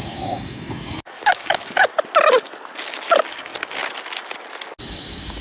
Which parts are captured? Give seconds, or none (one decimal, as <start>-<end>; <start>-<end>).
1.9-3.3; 3.8-4.8